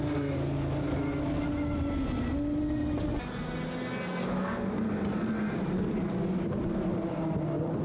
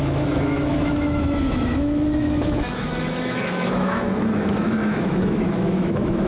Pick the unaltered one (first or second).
first